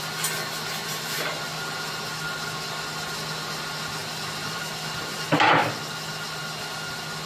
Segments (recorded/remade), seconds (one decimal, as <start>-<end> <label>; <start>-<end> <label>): 0.0-4.0 recorded; 4.0-4.8 remade; 4.8-7.3 recorded